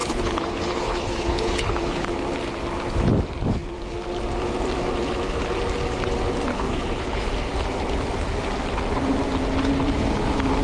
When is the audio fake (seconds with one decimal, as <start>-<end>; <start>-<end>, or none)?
0.0-2.1; 6.5-7.3